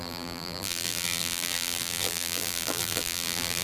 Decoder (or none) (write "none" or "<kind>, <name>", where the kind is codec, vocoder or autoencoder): vocoder, BigVGAN v2